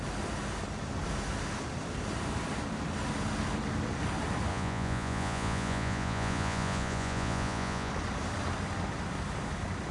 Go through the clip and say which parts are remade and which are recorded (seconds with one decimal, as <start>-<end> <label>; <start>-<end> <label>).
0.0-4.5 recorded; 4.5-7.9 remade; 7.9-9.9 recorded